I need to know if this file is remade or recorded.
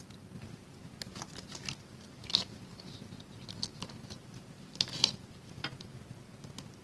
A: recorded